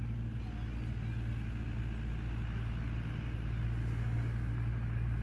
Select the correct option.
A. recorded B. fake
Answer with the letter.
A